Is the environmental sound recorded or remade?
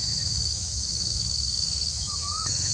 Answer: remade